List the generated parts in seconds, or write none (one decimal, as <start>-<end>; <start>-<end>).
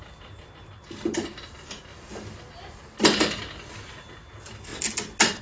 1.9-3.0; 4.7-5.4